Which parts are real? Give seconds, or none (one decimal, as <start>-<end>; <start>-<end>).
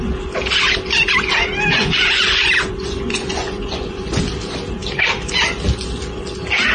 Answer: 0.0-1.7; 4.2-6.7